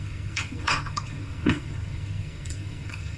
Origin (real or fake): fake